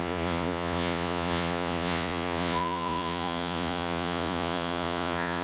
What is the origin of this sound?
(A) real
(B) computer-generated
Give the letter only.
B